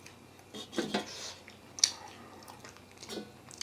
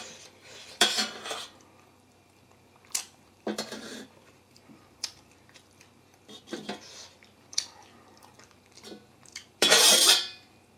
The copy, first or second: second